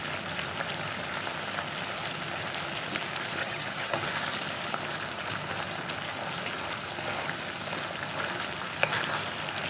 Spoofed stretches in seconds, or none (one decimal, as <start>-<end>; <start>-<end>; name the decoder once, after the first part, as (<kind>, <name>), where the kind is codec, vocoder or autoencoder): 3.4-4.0 (vocoder, HiFi-GAN)